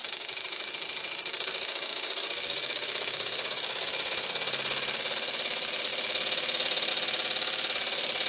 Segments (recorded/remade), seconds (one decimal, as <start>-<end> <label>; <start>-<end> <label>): 0.0-0.7 remade; 0.7-1.3 recorded; 1.3-3.8 remade; 3.8-8.3 recorded